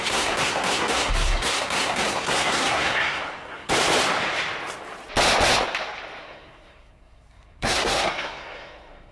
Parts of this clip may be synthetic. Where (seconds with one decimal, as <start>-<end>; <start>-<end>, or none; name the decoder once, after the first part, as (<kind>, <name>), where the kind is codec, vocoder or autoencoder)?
0.0-3.7 (codec, SNAC); 6.2-9.1